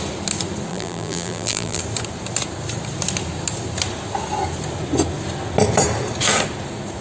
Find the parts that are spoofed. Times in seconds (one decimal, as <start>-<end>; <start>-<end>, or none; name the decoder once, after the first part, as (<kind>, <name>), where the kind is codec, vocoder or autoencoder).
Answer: 0.7-1.8 (vocoder, BigVGAN v2)